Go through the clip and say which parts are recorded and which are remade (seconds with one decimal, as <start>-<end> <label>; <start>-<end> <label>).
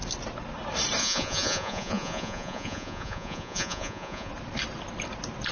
0.0-1.0 recorded; 1.0-4.3 remade; 4.3-5.5 recorded